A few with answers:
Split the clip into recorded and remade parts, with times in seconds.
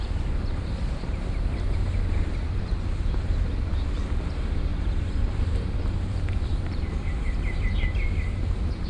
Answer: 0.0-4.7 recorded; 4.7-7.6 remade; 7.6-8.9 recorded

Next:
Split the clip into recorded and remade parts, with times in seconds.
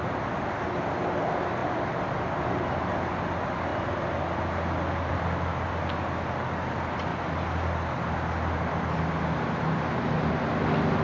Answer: 0.0-11.0 recorded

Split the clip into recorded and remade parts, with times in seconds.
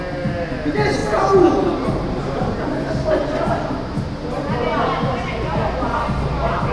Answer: 0.0-6.7 recorded